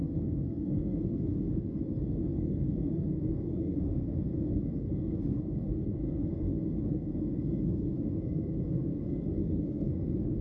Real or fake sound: fake